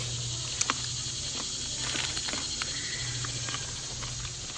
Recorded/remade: recorded